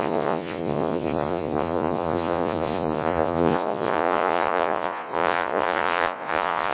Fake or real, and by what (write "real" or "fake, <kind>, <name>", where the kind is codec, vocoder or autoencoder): fake, vocoder, Vocos